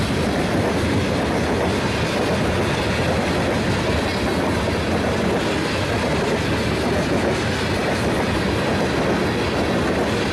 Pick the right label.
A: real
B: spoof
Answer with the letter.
A